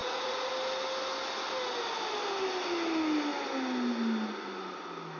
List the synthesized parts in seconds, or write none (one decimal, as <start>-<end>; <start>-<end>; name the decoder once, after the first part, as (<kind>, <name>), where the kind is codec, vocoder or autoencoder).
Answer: 0.0-0.5 (vocoder, Vocos)